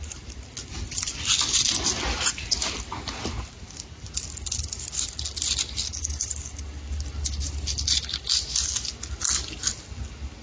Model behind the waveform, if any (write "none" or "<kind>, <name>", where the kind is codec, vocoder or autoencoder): none